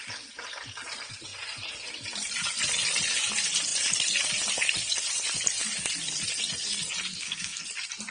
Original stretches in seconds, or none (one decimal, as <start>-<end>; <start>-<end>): 0.0-7.1; 7.6-8.1